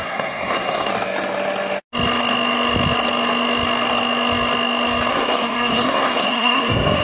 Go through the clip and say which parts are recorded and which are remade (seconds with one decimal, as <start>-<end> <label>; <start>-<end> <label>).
0.0-0.9 remade; 0.9-5.1 recorded; 5.1-7.0 remade